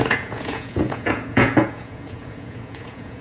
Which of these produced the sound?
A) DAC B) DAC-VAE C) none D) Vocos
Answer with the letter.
D